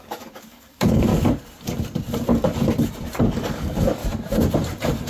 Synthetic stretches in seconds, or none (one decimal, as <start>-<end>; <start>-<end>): 0.0-1.1; 3.2-4.0